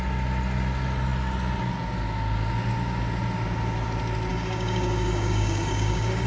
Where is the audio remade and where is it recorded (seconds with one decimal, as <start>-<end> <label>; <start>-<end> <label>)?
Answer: 0.0-4.3 recorded; 4.3-6.3 remade